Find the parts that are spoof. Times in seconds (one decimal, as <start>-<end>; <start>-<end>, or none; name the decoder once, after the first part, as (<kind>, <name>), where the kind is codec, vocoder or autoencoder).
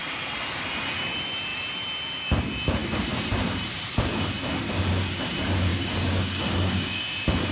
5.7-7.0 (codec, DAC)